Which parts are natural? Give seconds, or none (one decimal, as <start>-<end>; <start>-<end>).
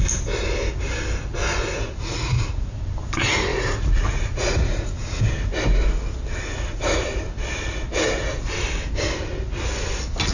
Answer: 0.0-1.7; 2.8-3.5; 5.2-6.4; 7.2-10.3